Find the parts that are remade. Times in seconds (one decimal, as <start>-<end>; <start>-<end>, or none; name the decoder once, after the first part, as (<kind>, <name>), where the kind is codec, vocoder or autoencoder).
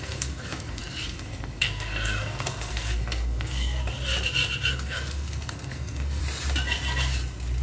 0.0-3.8 (codec, SNAC); 4.7-6.2